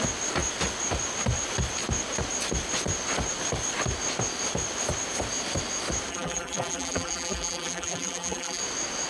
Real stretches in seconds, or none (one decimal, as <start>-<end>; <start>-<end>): 0.0-6.1; 8.6-9.1